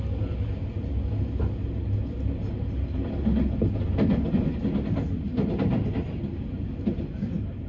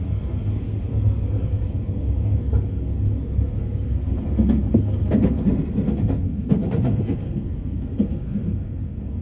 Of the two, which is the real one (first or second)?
first